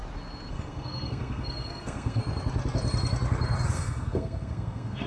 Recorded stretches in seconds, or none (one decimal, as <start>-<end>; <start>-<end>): 0.0-0.5; 2.2-3.7